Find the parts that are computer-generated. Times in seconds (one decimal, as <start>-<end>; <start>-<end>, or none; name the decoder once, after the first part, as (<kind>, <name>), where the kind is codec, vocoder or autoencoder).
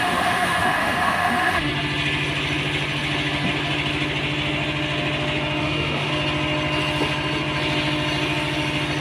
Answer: 0.0-1.7 (autoencoder, DAC-VAE); 5.6-6.1